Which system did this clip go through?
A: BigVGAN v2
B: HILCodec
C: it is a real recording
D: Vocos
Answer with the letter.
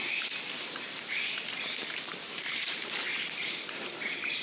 A